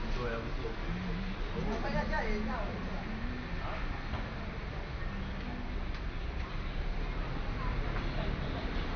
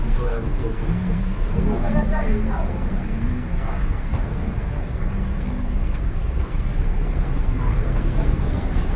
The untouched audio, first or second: first